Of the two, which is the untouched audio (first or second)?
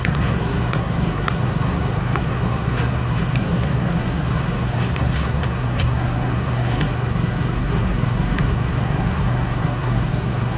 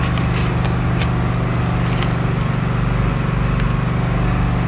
second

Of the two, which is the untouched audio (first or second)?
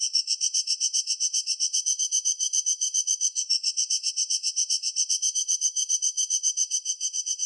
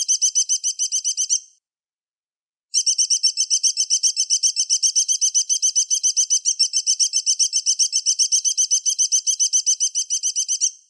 second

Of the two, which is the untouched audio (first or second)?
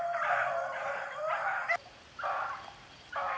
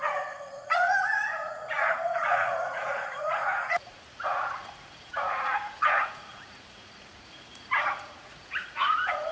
first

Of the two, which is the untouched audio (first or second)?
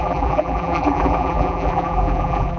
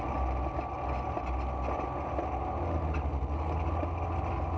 second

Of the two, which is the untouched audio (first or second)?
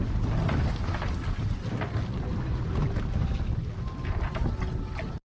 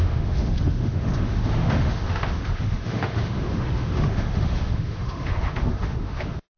first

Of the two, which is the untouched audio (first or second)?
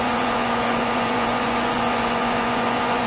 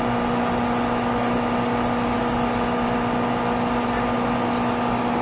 second